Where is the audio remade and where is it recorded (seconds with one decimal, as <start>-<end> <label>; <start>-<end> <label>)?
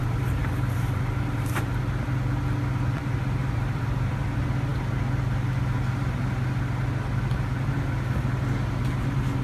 0.0-1.8 remade; 1.8-3.4 recorded; 3.4-4.1 remade; 4.1-9.4 recorded